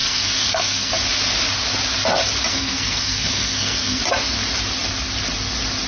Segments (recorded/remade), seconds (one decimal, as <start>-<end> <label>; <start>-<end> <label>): 0.0-0.9 remade; 0.9-2.5 recorded; 2.5-4.0 remade; 4.0-5.9 recorded